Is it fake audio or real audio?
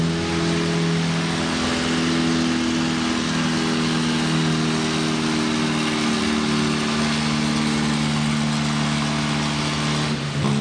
real